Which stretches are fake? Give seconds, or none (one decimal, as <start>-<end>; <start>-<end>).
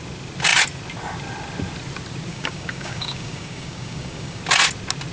2.3-4.4